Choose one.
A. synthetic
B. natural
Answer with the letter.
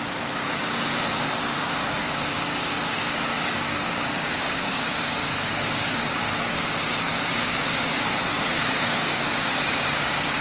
A